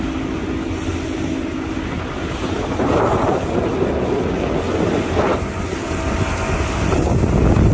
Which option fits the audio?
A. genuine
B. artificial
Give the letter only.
A